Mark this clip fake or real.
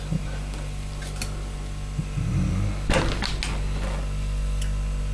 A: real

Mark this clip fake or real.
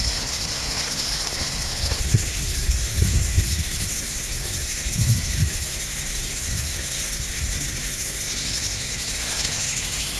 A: fake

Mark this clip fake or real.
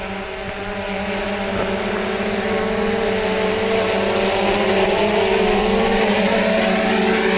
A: real